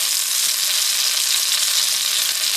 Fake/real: real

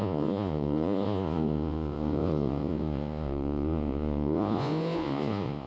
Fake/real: fake